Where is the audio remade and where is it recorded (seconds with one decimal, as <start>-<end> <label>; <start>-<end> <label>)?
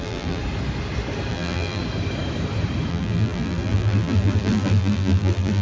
0.0-0.4 remade; 0.4-1.3 recorded; 1.3-1.8 remade; 1.8-2.9 recorded; 2.9-5.6 remade